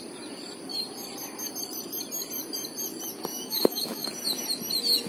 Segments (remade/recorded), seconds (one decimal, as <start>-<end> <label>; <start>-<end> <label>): 0.0-3.3 recorded; 3.3-4.1 remade; 4.1-5.1 recorded